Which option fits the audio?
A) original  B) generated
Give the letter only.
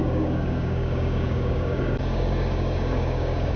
B